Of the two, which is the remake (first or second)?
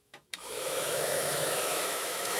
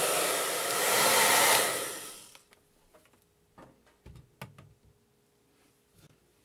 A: first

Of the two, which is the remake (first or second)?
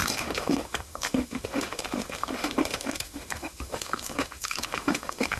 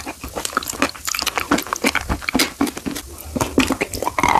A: first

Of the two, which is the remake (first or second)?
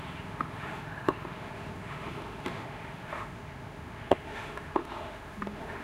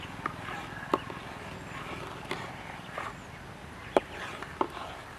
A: first